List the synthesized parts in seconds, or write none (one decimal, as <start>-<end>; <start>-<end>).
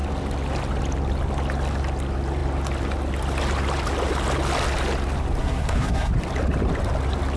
5.4-6.1